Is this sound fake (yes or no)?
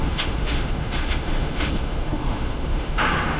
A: yes